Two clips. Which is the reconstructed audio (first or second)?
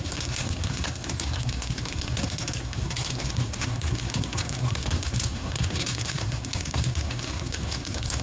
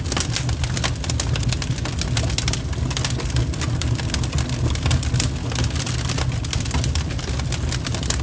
first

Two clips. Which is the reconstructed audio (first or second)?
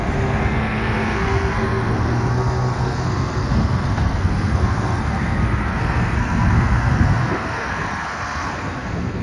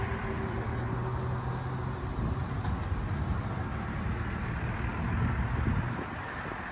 first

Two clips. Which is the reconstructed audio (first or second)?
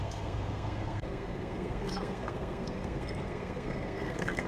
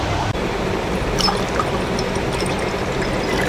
first